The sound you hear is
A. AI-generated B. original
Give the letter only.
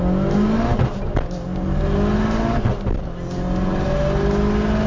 B